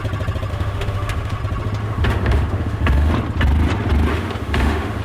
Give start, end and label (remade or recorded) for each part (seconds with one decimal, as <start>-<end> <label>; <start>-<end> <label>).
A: 0.0-0.5 recorded; 0.5-1.4 remade; 1.4-1.8 recorded; 1.8-3.1 remade; 3.1-4.1 recorded; 4.1-5.0 remade